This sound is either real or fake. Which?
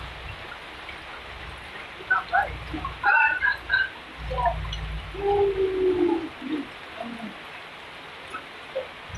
real